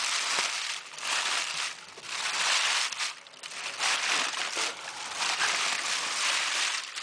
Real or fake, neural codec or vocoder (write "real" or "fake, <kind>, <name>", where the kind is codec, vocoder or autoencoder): real